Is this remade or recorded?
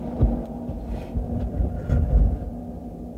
recorded